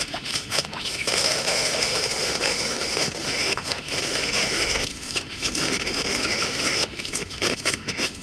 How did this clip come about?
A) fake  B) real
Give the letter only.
A